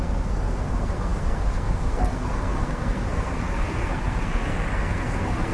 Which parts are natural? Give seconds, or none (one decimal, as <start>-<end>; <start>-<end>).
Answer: none